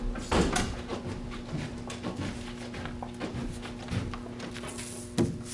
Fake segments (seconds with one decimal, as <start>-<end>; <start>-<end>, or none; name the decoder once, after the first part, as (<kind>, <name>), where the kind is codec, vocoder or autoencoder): none